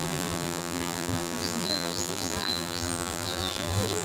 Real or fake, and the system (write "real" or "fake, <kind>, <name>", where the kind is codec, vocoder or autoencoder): fake, vocoder, BigVGAN v2